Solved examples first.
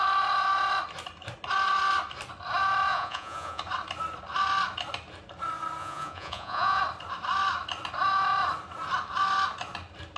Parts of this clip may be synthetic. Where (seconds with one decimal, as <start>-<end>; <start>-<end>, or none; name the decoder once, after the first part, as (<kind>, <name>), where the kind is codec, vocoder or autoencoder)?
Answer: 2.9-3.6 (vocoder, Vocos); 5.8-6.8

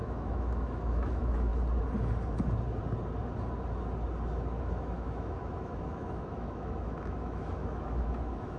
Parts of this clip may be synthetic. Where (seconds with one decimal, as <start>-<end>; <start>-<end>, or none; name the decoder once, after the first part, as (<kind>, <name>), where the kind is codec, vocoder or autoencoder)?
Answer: 0.0-1.5 (autoencoder, DAC-VAE); 4.6-8.6

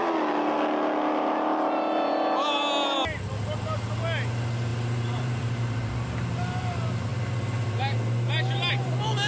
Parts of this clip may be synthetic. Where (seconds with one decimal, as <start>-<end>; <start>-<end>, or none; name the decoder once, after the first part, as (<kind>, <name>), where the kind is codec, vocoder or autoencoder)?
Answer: 4.7-5.9 (vocoder, BigVGAN v2)

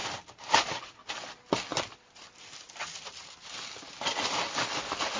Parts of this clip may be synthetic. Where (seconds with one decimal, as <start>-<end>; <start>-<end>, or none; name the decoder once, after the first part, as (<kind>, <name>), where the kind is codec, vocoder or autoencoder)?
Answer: none

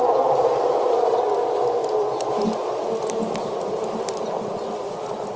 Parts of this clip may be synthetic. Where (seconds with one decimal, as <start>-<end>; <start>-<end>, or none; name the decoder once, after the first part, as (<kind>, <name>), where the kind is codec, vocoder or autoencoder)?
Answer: none